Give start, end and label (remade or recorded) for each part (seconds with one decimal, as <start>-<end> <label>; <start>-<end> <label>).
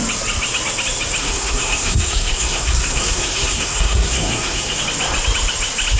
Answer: 0.0-1.2 recorded; 1.2-4.8 remade; 4.8-6.0 recorded